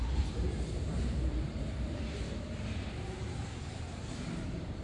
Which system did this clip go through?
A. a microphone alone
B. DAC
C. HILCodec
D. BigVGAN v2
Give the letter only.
D